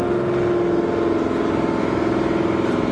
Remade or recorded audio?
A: recorded